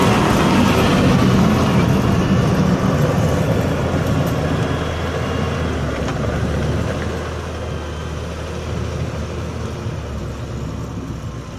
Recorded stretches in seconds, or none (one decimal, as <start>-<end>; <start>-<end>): 0.0-11.6

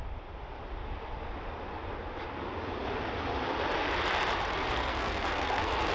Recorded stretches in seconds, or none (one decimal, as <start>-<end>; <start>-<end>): 0.0-4.5